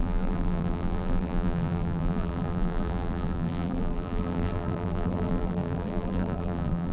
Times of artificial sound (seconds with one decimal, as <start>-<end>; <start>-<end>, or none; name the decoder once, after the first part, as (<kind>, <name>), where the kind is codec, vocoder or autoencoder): 0.0-6.9 (vocoder, BigVGAN v2)